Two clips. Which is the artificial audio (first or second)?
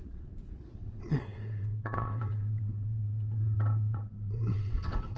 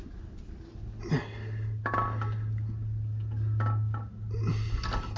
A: first